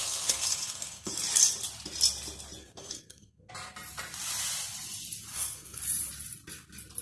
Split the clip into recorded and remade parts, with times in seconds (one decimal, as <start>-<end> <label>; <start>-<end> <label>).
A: 0.0-1.1 remade; 1.1-2.6 recorded; 2.6-3.5 remade; 3.5-5.3 recorded; 5.3-5.8 remade; 5.8-7.0 recorded